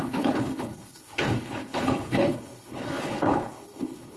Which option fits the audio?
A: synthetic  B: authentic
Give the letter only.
A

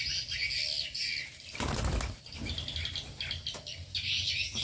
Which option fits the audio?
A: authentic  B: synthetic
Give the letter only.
A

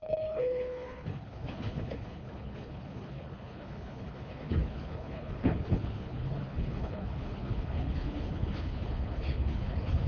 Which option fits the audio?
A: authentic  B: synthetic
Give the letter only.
B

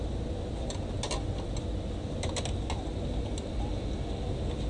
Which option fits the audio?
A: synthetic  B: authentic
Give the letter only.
B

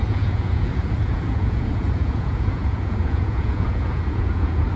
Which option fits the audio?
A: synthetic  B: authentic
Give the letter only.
A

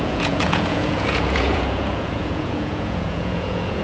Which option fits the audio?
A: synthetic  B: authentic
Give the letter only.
A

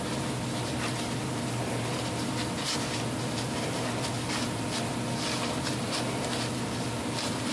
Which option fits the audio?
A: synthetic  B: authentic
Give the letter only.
B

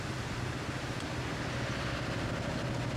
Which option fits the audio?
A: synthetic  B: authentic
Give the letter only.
B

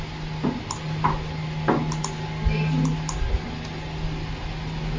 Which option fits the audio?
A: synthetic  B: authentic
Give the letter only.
B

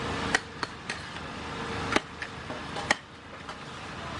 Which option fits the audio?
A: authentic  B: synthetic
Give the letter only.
A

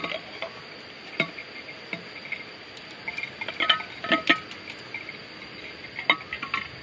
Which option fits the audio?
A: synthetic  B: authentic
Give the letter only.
B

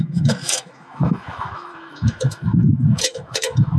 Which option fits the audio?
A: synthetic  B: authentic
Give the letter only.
A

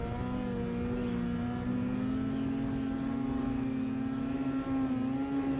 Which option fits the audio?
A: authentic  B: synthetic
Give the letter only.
A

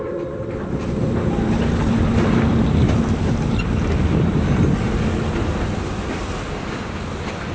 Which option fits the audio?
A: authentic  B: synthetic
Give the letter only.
A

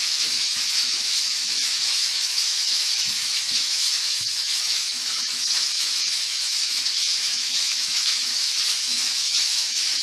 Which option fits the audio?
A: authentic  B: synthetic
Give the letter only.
B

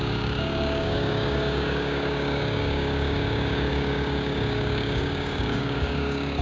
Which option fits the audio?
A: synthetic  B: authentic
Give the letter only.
A